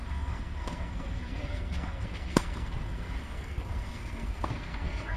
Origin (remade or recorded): remade